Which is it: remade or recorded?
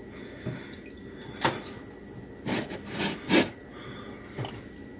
recorded